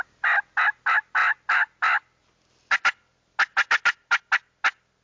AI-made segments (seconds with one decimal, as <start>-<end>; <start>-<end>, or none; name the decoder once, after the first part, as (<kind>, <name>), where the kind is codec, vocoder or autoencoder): none